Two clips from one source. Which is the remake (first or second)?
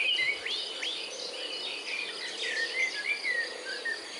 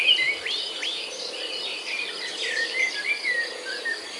second